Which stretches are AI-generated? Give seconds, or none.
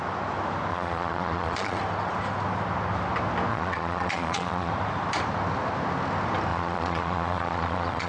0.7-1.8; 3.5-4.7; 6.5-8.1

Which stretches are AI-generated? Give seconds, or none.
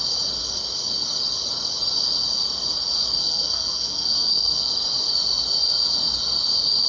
3.2-4.7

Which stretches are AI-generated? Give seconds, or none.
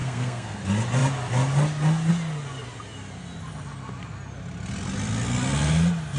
0.0-0.6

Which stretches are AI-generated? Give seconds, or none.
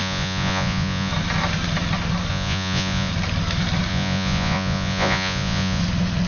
0.0-1.1; 2.3-3.1; 3.9-5.8